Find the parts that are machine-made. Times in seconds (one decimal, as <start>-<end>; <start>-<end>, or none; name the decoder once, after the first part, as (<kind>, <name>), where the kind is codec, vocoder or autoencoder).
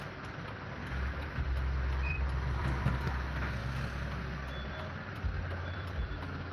0.0-0.8 (vocoder, BigVGAN v2); 1.4-3.6; 4.7-6.5